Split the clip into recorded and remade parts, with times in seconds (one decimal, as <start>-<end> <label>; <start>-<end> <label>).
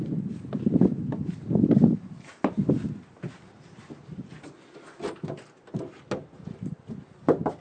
0.0-7.6 recorded